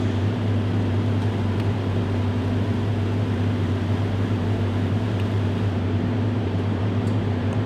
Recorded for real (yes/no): no